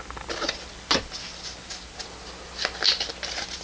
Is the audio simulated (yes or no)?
no